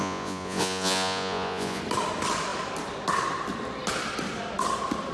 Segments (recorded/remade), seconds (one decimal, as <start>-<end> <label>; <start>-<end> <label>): 0.0-1.8 remade; 1.8-5.1 recorded